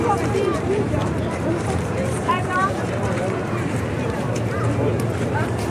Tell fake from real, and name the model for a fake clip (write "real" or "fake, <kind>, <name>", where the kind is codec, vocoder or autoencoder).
fake, vocoder, BigVGAN v2